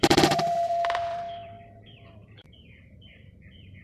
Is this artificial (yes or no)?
yes